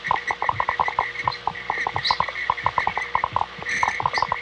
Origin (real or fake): real